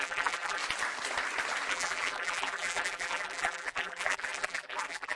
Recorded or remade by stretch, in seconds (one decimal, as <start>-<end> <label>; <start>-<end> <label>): 0.0-0.6 remade; 0.6-1.7 recorded; 1.7-5.2 remade